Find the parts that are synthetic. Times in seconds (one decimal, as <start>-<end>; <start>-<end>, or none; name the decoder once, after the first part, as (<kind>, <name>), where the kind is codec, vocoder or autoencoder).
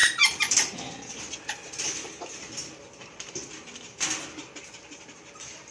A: 0.0-1.1 (vocoder, BigVGAN v2)